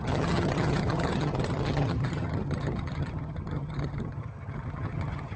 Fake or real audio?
fake